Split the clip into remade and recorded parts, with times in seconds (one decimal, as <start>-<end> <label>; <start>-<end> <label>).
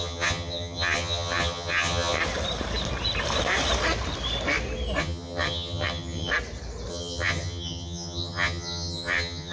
0.0-2.2 remade; 2.2-5.0 recorded; 5.0-6.3 remade; 6.3-6.9 recorded; 6.9-9.5 remade